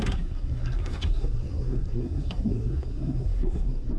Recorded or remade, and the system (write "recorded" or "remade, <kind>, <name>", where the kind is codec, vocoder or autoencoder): remade, codec, SNAC